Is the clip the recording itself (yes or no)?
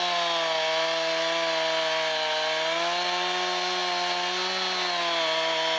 yes